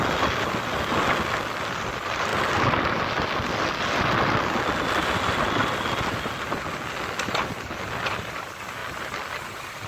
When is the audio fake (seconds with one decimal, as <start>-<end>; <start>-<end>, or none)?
none